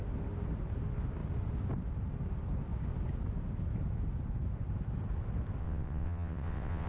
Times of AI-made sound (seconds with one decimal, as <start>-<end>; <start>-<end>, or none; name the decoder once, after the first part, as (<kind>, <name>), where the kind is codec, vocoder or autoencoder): 5.6-6.9 (vocoder, WaveNeXt)